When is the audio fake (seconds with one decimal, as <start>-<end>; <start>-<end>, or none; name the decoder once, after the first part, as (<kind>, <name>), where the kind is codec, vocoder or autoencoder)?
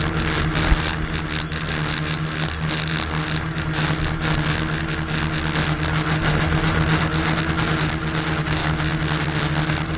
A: none